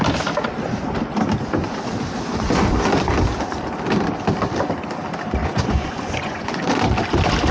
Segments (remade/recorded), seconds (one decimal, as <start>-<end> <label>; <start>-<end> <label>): 0.0-5.4 recorded; 5.4-6.6 remade; 6.6-7.5 recorded